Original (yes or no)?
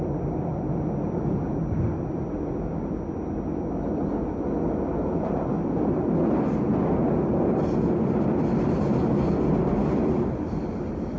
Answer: yes